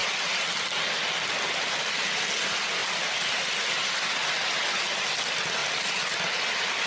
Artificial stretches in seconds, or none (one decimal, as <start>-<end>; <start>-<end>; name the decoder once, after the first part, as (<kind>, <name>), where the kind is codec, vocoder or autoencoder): none